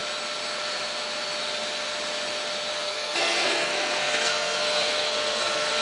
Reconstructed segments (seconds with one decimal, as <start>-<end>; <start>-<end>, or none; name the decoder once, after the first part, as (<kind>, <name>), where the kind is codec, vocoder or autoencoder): 2.7-5.8 (codec, SNAC)